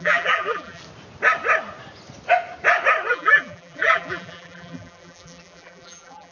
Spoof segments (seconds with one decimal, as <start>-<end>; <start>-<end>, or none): 0.0-0.8; 3.1-6.3